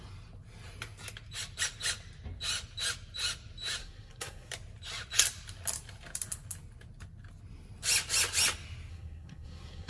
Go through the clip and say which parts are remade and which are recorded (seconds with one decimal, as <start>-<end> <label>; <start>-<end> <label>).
0.0-3.8 recorded; 3.8-4.5 remade; 4.5-8.9 recorded; 8.9-9.9 remade